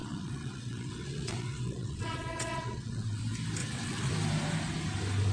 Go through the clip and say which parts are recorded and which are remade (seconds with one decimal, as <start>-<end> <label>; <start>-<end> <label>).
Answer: 0.0-3.2 remade; 3.2-3.6 recorded; 3.6-4.1 remade; 4.1-5.3 recorded